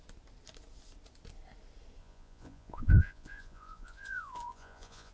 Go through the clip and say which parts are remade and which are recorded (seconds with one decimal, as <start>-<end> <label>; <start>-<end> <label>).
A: 0.0-2.0 recorded; 2.0-5.1 remade